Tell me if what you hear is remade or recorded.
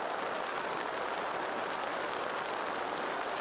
remade